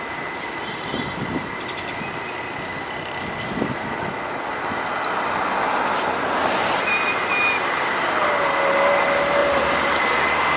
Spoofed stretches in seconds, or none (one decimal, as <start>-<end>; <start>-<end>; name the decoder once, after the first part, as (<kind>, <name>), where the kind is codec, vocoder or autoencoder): 9.4-10.0 (vocoder, BigVGAN v2)